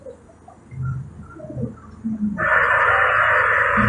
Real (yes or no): yes